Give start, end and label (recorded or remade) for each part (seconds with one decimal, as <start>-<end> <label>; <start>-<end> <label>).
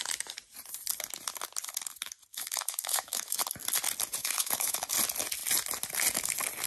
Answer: 0.0-2.3 recorded; 2.3-3.4 remade; 3.4-4.2 recorded; 4.2-4.9 remade; 4.9-6.7 recorded